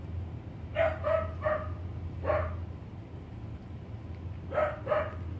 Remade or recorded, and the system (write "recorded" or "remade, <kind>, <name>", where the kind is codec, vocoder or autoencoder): recorded